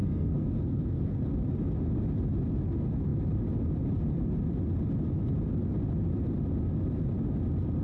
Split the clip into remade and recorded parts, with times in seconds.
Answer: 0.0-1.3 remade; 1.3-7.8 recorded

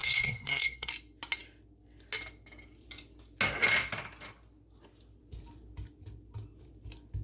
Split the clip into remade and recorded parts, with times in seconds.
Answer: 0.0-0.9 remade; 0.9-7.2 recorded

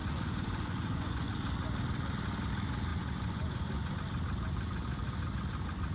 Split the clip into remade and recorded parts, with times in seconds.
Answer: 0.0-1.3 remade; 1.3-2.9 recorded; 2.9-3.9 remade; 3.9-5.9 recorded